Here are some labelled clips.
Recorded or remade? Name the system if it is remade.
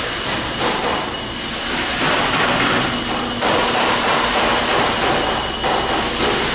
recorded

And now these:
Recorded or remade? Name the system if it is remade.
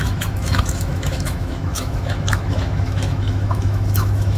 remade, autoencoder, DAC-VAE